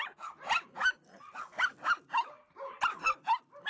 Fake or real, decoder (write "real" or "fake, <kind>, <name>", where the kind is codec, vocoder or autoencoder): real